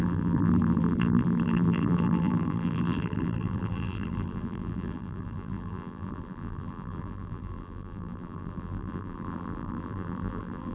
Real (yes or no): no